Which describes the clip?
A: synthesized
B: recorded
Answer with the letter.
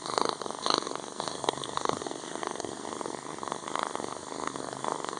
A